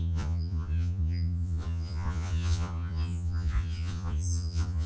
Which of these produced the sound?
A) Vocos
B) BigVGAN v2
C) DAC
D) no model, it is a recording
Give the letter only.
A